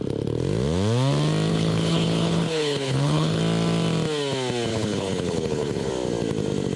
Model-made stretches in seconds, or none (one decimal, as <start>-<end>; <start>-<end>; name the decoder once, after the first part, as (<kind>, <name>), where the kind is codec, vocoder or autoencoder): 1.5-3.4 (codec, HILCodec); 4.7-5.9